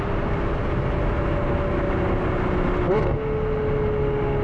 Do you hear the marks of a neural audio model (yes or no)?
no